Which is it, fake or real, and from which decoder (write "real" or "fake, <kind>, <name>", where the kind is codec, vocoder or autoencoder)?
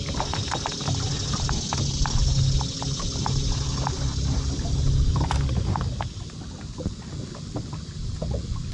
real